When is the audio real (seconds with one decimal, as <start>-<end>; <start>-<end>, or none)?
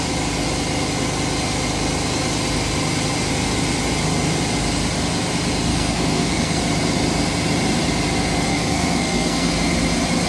0.0-5.7; 6.6-8.5; 9.5-10.3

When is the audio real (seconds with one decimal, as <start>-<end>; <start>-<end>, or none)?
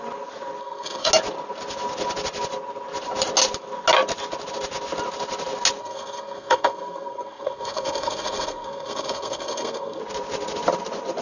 0.0-0.6; 1.1-5.8; 10.0-11.2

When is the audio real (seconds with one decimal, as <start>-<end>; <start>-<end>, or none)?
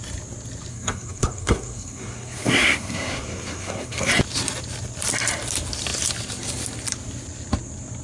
0.0-0.7; 4.1-8.0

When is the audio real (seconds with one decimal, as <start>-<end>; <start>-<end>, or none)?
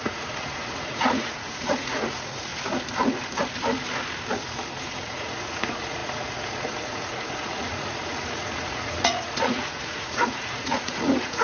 2.5-4.8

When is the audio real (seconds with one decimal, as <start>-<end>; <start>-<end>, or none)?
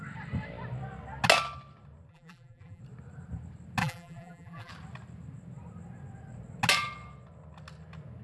0.0-2.1; 2.8-3.8; 4.7-8.2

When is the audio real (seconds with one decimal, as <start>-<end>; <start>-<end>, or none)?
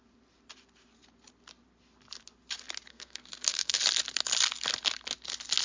0.0-2.9; 3.8-5.6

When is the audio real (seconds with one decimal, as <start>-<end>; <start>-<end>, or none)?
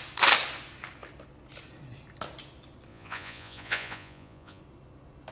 0.0-2.9; 4.6-5.3